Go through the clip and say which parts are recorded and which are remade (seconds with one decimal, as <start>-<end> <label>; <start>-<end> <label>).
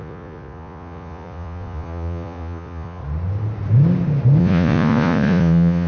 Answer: 0.0-3.0 remade; 3.0-4.4 recorded; 4.4-5.9 remade